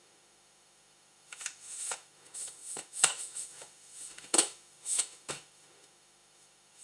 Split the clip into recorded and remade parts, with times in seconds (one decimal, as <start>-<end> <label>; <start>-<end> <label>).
0.0-6.8 remade